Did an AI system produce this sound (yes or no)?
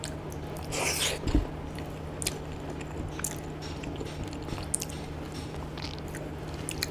no